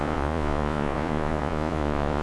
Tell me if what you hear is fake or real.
fake